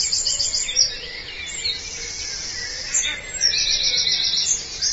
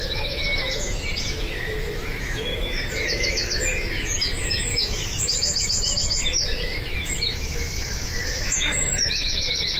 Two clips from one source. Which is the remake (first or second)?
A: second